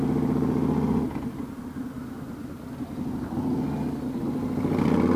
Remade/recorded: recorded